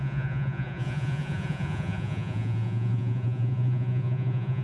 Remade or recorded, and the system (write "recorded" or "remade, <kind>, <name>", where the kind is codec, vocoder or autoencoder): remade, vocoder, Vocos